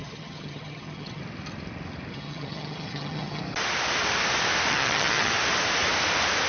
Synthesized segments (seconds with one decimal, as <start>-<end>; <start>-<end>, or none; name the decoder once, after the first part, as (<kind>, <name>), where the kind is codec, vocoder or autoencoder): 0.0-1.2 (vocoder, HiFi-GAN); 2.1-3.4; 4.7-5.3